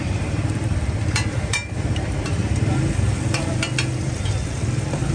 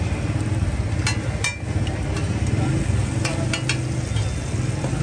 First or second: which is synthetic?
first